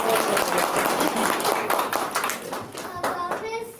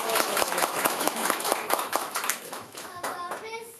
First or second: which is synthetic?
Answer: second